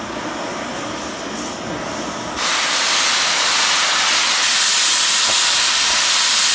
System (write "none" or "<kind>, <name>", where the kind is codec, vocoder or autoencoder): none